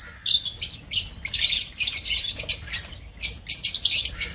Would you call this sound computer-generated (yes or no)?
no